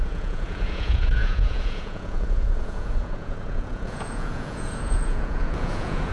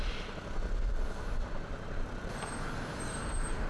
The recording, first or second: second